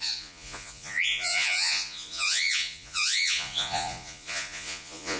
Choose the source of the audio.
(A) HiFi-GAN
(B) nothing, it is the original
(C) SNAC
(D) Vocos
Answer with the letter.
D